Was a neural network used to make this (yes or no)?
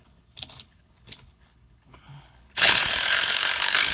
yes